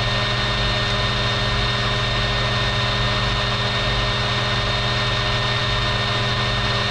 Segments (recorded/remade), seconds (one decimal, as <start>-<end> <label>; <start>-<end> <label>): 0.0-6.9 recorded